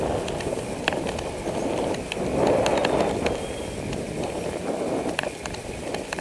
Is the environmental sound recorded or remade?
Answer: recorded